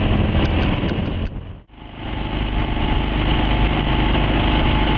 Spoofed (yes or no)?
no